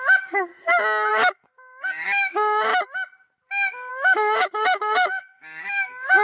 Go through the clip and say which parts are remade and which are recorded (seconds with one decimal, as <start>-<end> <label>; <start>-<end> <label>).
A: 0.0-0.5 remade; 0.5-1.1 recorded; 1.1-2.7 remade; 2.7-3.9 recorded; 3.9-6.2 remade